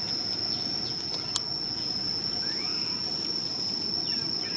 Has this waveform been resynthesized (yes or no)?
no